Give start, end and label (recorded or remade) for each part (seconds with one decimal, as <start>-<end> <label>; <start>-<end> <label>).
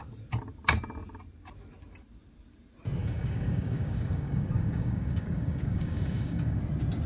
0.0-3.0 recorded; 3.0-6.6 remade; 6.6-7.1 recorded